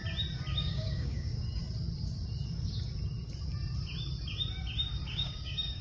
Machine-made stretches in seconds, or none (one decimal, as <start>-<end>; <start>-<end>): 0.5-1.6; 5.1-5.8